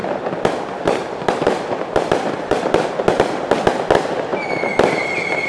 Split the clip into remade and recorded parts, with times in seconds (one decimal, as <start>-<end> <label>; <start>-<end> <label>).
0.0-2.6 remade; 2.6-5.5 recorded